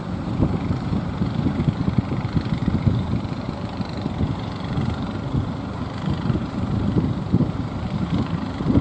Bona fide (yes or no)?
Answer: no